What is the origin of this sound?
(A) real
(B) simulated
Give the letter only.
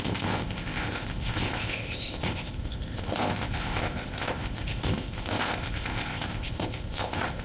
B